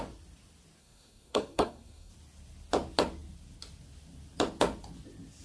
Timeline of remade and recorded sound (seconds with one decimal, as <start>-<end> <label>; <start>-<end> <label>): 0.0-0.8 recorded; 0.8-2.1 remade; 2.1-5.4 recorded